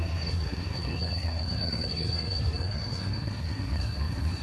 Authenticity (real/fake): fake